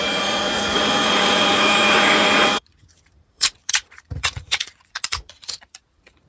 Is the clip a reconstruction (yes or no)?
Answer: yes